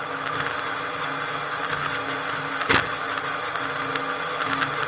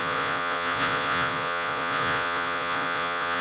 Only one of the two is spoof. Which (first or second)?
second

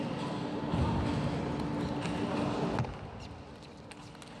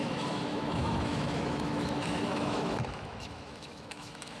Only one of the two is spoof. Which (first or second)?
second